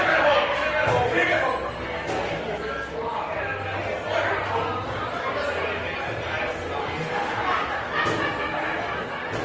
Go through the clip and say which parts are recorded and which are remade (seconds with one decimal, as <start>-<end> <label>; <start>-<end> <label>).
0.0-6.8 recorded; 6.8-7.4 remade; 7.4-9.4 recorded